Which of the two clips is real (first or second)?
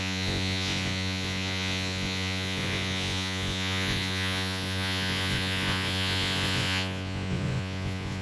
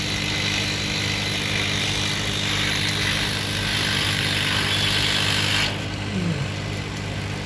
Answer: second